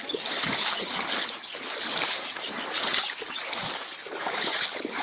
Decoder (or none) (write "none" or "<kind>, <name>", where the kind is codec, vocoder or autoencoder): codec, DAC